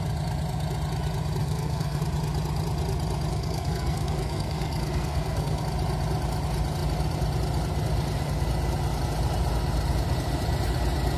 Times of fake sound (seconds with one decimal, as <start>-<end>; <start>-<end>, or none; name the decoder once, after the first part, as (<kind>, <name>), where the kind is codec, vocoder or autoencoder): 1.4-2.0 (codec, SNAC); 3.3-5.6